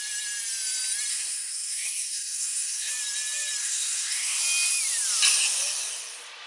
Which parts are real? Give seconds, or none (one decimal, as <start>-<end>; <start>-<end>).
0.0-1.1; 2.9-3.6; 4.4-6.5